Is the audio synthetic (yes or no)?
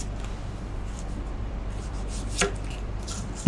yes